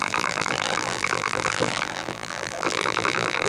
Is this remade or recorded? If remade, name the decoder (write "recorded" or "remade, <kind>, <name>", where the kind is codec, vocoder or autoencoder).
remade, vocoder, BigVGAN v2